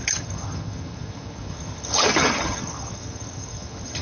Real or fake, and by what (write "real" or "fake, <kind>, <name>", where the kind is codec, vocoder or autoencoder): fake, vocoder, HiFi-GAN